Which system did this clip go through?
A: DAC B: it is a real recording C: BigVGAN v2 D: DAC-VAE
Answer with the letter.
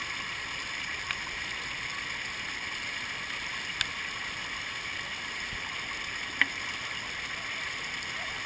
B